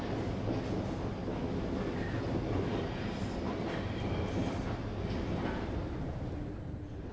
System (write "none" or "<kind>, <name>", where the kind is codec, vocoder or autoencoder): none